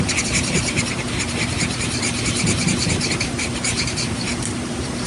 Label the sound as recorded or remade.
remade